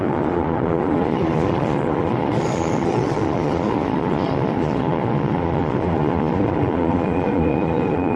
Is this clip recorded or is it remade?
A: remade